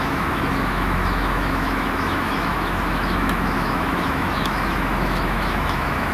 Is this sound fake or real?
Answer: fake